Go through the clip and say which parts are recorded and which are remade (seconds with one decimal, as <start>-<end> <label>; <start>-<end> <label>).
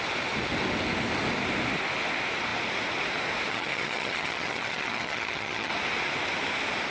0.0-3.5 recorded; 3.5-5.7 remade; 5.7-6.9 recorded